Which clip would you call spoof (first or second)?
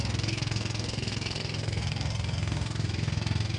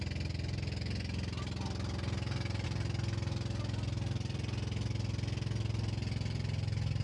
first